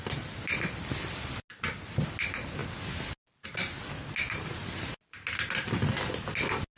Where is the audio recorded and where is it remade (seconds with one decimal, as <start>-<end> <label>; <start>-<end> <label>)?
0.0-6.8 recorded